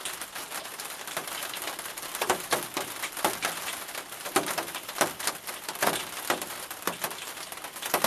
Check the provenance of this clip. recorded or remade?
remade